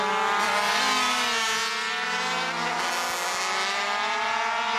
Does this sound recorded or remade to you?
recorded